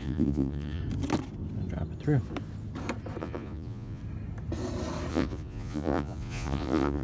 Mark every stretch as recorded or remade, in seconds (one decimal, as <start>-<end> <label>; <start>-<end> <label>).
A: 0.0-0.8 remade; 0.8-3.2 recorded; 3.2-4.0 remade; 4.0-5.1 recorded; 5.1-7.0 remade